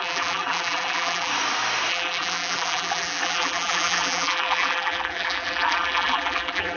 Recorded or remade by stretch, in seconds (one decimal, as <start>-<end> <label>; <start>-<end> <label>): 0.0-1.3 remade; 1.3-1.9 recorded; 1.9-6.8 remade